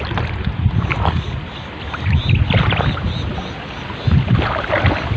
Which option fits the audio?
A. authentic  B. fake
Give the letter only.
A